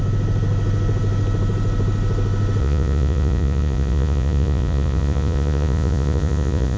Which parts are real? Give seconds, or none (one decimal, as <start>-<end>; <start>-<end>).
0.0-2.6